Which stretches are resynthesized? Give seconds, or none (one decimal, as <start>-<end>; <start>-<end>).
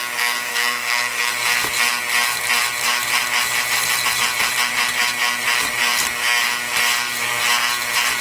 0.5-1.3